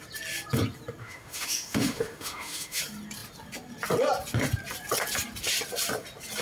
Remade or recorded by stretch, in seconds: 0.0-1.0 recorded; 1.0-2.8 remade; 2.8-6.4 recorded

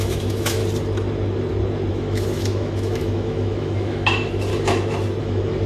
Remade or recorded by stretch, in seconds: 0.0-0.6 remade; 0.6-1.9 recorded; 1.9-4.5 remade; 4.5-5.2 recorded; 5.2-5.7 remade